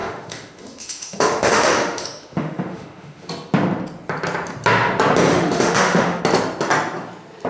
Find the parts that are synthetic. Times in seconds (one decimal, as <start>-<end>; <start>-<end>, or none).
0.0-3.3; 5.3-6.2